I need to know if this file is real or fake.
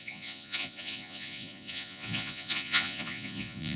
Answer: fake